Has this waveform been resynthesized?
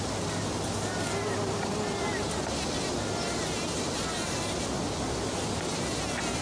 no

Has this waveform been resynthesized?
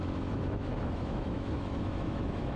yes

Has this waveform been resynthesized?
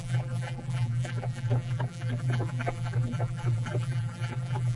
yes